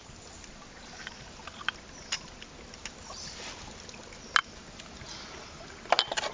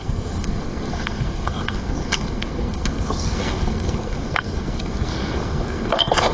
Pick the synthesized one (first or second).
second